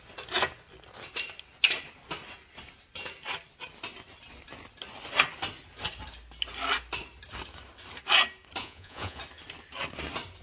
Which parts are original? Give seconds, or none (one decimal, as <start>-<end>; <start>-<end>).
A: 0.0-8.6; 9.2-10.4